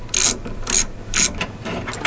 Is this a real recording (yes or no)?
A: yes